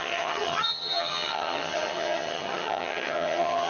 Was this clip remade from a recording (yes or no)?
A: yes